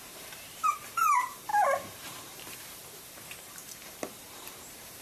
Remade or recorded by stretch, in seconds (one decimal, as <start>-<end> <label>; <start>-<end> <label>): 0.0-5.0 remade